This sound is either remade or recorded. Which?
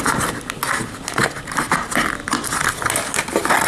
recorded